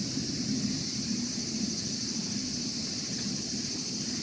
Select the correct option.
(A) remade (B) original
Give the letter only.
A